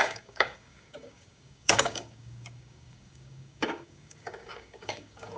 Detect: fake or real fake